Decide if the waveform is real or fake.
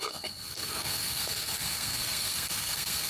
fake